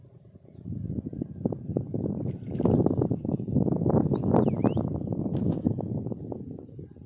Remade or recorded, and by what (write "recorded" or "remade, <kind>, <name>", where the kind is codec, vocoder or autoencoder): recorded